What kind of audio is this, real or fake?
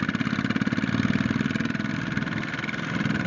real